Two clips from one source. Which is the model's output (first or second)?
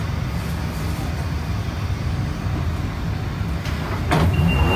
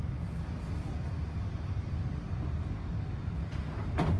second